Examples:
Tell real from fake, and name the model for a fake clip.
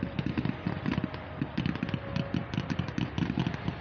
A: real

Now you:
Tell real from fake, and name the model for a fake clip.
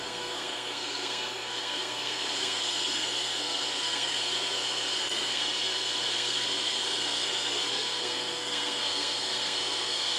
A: fake, codec, SNAC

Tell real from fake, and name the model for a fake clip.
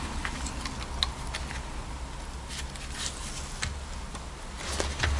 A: real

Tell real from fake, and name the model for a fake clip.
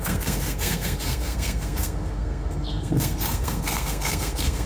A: fake, codec, SNAC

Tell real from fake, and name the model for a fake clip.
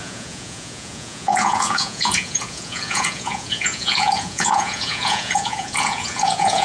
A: fake, vocoder, Vocos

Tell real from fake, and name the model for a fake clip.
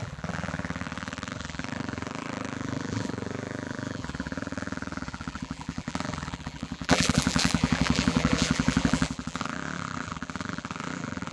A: fake, vocoder, BigVGAN v2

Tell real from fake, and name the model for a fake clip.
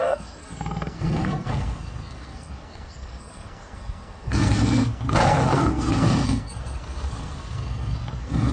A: fake, codec, SNAC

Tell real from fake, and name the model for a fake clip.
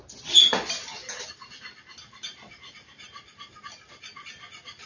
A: real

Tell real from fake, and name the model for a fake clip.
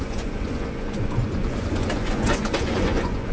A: fake, vocoder, Vocos